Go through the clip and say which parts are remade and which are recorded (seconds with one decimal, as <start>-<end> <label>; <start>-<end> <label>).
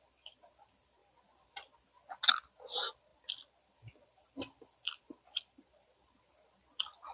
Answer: 0.0-1.0 recorded; 1.0-2.1 remade; 2.1-3.1 recorded; 3.1-6.2 remade; 6.2-7.1 recorded